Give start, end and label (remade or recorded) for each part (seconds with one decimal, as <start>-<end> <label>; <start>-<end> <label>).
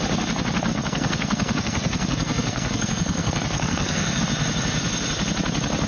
0.0-0.7 recorded; 0.7-4.2 remade; 4.2-5.9 recorded